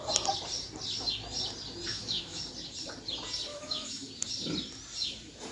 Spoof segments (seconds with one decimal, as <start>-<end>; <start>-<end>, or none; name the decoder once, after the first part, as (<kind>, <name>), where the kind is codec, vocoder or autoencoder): 1.9-2.4 (autoencoder, DAC-VAE); 3.5-4.1